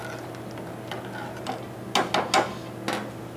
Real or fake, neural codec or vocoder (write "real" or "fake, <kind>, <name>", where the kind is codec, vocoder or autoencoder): real